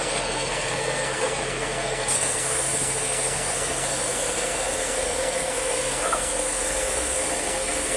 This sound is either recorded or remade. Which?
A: remade